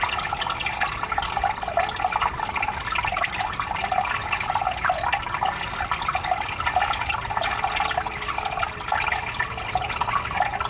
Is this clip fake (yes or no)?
no